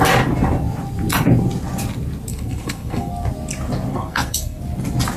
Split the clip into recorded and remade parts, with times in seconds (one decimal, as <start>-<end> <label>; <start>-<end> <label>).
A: 0.0-2.3 recorded; 2.3-3.1 remade; 3.1-3.9 recorded; 3.9-4.6 remade; 4.6-5.2 recorded